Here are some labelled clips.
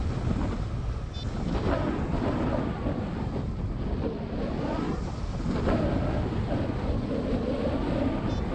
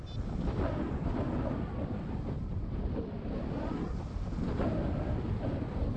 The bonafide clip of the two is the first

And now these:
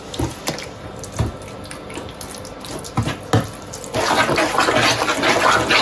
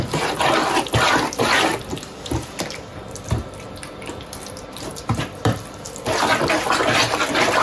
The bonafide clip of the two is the first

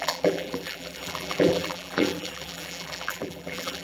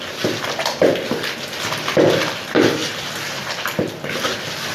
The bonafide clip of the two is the second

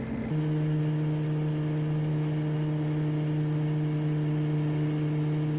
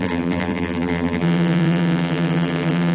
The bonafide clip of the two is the first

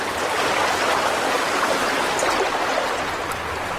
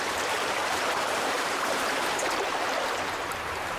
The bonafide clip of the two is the first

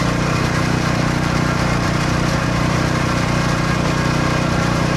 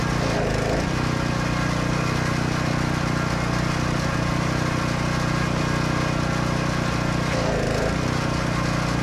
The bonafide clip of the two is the second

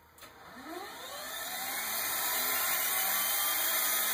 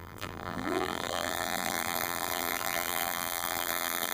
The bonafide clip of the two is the first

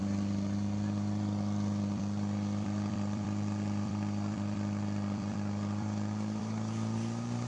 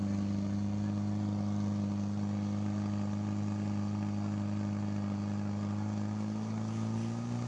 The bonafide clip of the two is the second